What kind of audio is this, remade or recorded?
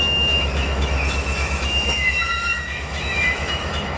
remade